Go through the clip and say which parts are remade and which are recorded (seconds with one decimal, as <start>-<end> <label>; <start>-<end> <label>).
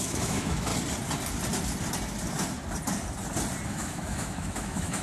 0.0-0.7 remade; 0.7-3.7 recorded; 3.7-5.0 remade